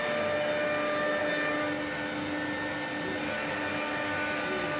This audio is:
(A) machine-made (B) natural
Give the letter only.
B